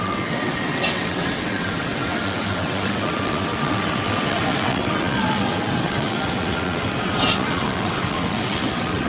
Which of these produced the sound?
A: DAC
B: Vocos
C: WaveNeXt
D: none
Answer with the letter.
C